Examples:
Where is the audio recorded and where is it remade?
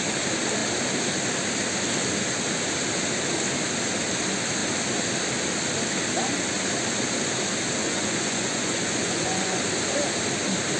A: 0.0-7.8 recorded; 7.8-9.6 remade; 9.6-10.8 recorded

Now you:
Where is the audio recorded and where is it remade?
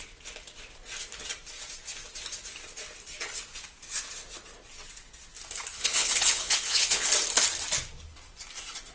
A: 0.0-5.7 recorded; 5.7-7.1 remade; 7.1-8.9 recorded